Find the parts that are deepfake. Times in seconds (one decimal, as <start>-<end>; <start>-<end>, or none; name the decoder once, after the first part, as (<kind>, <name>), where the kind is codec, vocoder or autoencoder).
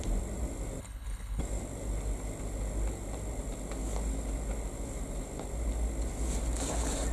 0.8-1.4 (codec, HILCodec)